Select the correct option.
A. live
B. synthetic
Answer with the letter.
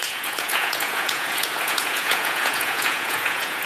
B